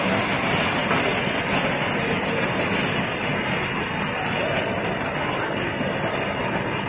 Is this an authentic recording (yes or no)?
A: yes